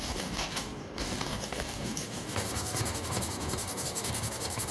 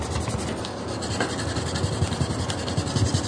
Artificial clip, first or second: first